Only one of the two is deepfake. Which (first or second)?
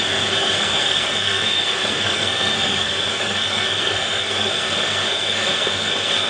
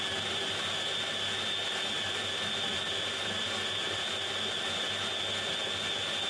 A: first